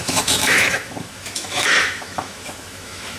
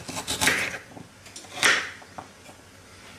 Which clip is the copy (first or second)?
first